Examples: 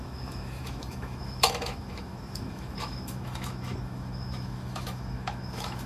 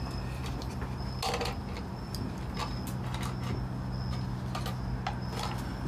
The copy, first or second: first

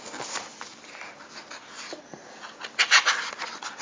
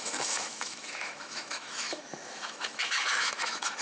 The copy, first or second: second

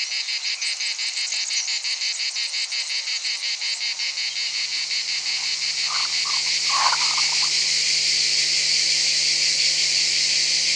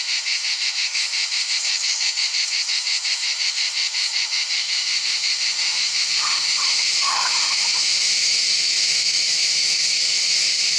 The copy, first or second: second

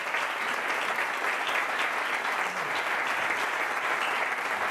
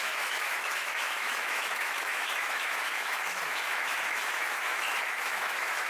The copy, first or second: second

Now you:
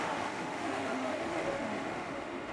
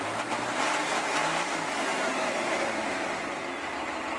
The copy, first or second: first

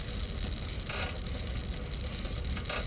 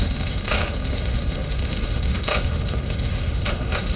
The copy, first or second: second